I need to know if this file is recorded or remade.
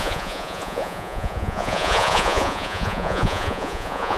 remade